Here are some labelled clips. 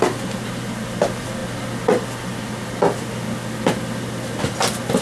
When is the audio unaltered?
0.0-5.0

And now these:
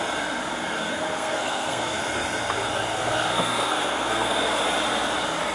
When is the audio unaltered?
0.0-0.8; 2.0-2.9; 4.6-5.5

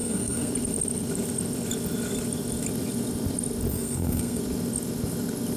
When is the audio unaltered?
0.5-3.7; 4.4-5.6

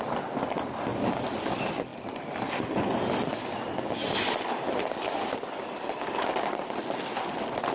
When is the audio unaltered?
0.0-7.7

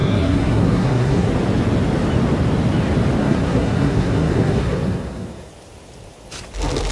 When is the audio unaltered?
1.3-3.2; 5.5-6.9

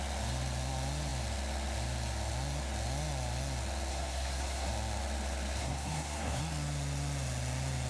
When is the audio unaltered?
0.0-3.9; 4.7-5.6; 6.4-7.9

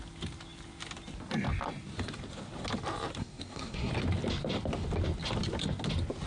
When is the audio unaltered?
0.0-3.2; 3.9-6.3